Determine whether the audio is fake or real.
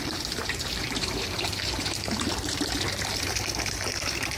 fake